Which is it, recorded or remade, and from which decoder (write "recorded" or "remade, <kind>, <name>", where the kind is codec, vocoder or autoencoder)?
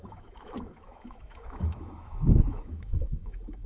remade, autoencoder, DAC-VAE